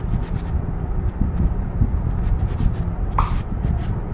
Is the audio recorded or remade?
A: recorded